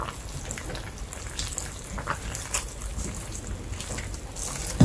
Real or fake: real